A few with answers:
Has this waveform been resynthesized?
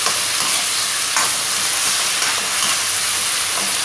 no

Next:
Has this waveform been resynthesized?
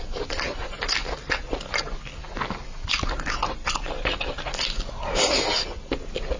no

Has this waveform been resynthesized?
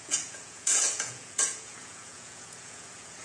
yes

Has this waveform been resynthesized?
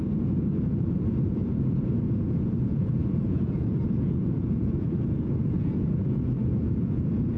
yes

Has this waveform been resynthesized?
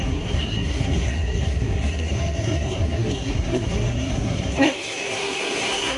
yes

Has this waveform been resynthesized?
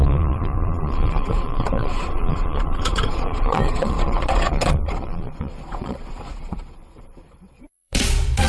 yes